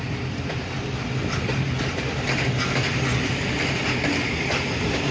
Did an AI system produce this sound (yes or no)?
no